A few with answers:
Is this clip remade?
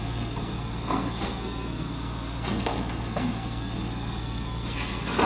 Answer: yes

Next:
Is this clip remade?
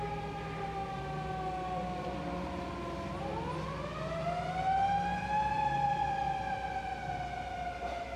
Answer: no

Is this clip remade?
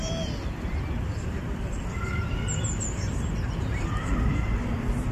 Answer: yes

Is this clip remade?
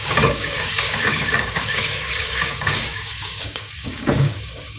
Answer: yes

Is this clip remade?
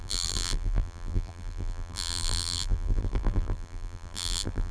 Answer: yes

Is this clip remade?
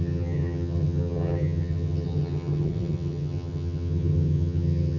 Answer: yes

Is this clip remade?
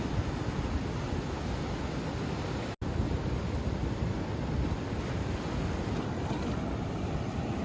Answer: no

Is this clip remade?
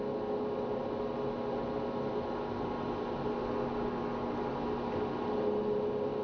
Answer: no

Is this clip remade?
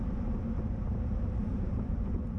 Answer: yes